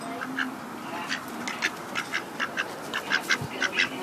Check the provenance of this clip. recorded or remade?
recorded